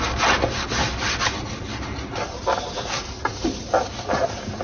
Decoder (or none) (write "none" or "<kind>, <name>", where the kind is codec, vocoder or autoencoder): none